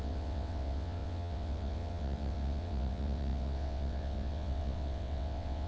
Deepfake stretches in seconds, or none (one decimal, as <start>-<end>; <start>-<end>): 0.0-5.7